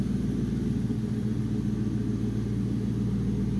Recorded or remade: recorded